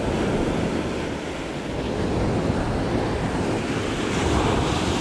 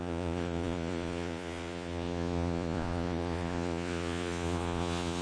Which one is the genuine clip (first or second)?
first